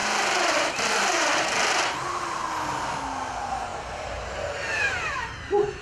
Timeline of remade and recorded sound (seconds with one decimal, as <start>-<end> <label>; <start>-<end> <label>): 0.0-2.4 remade; 2.4-3.3 recorded; 3.3-5.8 remade